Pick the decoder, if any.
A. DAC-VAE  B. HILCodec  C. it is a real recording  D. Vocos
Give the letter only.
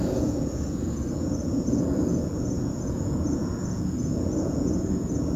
D